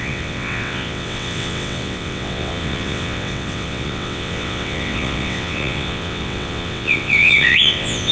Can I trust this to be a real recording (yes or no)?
no